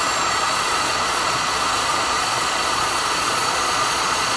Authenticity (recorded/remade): remade